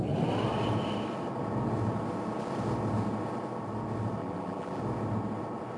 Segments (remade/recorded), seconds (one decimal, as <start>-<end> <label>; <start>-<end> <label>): 0.0-4.2 recorded; 4.2-4.8 remade; 4.8-5.8 recorded